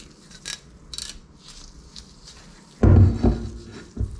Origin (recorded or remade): recorded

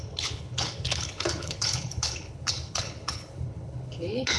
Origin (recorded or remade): remade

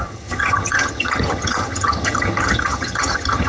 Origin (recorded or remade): remade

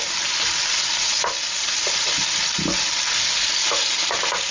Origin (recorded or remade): recorded